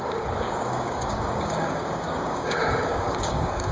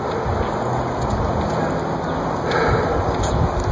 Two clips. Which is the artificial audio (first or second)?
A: first